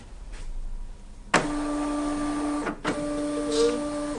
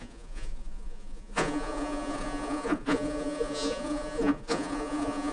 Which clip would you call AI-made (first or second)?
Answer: second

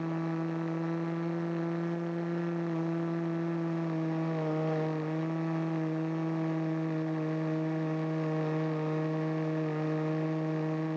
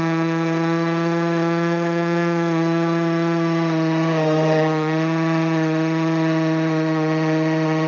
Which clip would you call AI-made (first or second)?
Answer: second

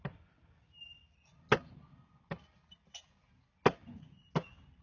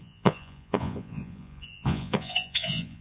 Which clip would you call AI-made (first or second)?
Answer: second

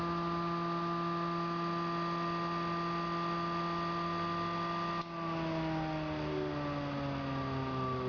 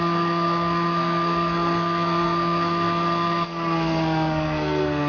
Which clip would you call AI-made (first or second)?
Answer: second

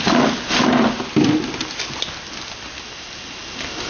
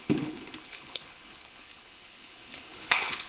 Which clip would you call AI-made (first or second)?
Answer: second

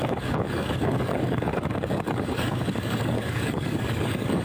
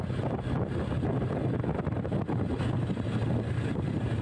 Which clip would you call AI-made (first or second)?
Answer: first